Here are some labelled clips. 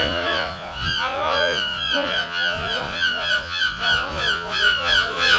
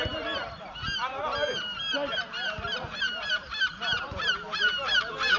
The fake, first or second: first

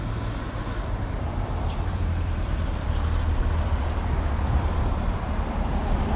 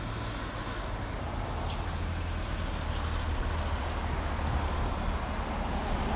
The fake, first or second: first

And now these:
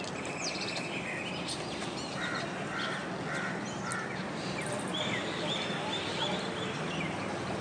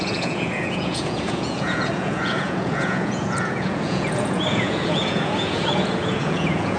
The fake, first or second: second